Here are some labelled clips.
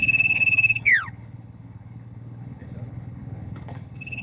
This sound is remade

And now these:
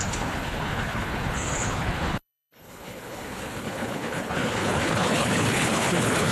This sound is remade